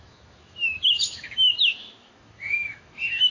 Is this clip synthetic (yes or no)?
yes